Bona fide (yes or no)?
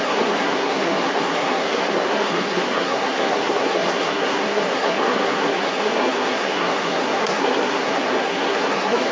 no